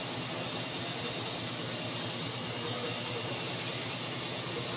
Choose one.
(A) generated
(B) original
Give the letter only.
B